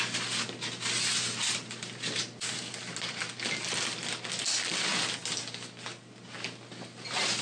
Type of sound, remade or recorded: recorded